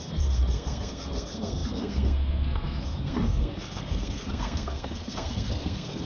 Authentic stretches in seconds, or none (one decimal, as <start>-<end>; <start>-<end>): none